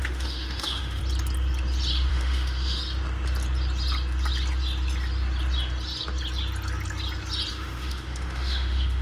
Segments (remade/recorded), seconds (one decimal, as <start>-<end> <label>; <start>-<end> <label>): 0.0-1.0 remade; 1.0-2.1 recorded; 2.1-2.8 remade; 2.8-7.5 recorded; 7.5-9.0 remade